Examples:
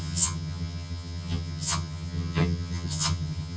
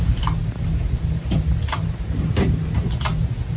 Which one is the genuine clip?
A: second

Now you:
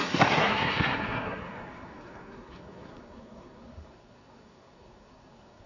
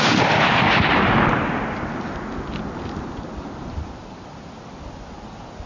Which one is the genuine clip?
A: second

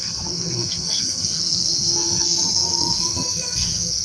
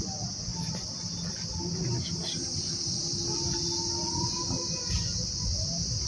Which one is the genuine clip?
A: second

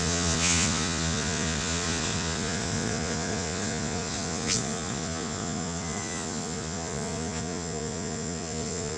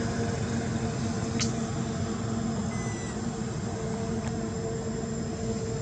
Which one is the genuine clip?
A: second